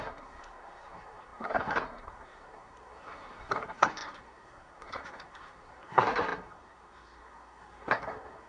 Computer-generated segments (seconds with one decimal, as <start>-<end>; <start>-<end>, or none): 0.0-8.5